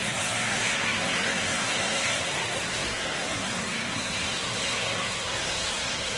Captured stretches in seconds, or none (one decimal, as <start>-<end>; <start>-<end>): none